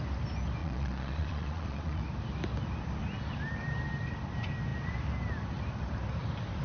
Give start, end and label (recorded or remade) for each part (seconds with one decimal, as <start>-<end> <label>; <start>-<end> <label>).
0.0-0.6 recorded; 0.6-2.0 remade; 2.0-6.6 recorded